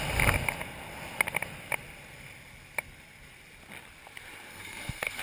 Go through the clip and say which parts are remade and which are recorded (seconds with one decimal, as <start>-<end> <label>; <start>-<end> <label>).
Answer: 0.0-4.5 recorded; 4.5-5.2 remade